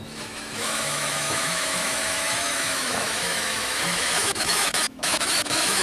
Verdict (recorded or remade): remade